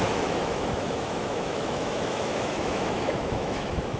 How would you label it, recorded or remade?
remade